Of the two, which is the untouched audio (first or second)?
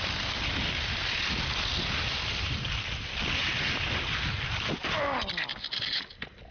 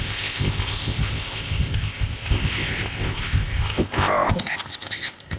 first